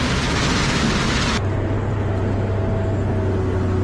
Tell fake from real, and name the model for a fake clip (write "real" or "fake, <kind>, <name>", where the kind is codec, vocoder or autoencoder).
real